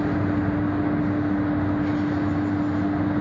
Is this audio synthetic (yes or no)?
no